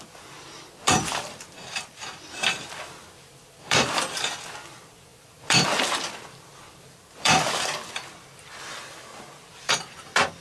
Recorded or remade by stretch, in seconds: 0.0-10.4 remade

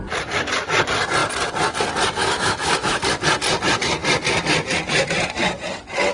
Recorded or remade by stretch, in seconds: 0.0-2.2 recorded; 2.2-3.0 remade; 3.0-6.1 recorded

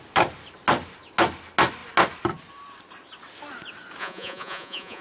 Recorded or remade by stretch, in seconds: 0.0-4.0 recorded; 4.0-5.0 remade

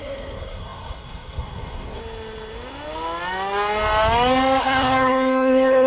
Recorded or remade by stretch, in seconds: 0.0-2.0 remade; 2.0-4.6 recorded; 4.6-5.9 remade

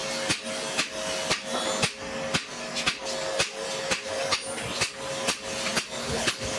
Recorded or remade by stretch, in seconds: 0.0-6.0 recorded; 6.0-6.6 remade

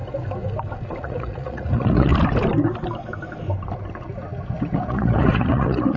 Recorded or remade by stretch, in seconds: 0.0-1.0 recorded; 1.0-2.1 remade; 2.1-4.7 recorded; 4.7-6.0 remade

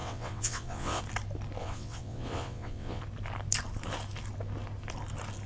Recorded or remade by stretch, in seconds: 0.0-1.0 remade; 1.0-1.6 recorded; 1.6-3.0 remade; 3.0-5.5 recorded